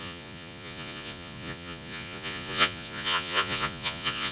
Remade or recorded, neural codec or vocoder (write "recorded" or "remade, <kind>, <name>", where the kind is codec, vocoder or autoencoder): remade, vocoder, Vocos